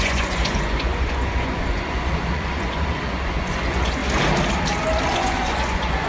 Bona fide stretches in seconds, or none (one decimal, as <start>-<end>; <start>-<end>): 4.0-5.1